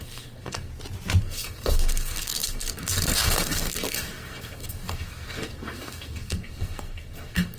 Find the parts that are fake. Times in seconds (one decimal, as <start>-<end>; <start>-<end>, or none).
0.0-0.7; 1.2-7.6